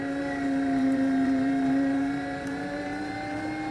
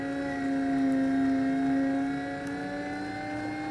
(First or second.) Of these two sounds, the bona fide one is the second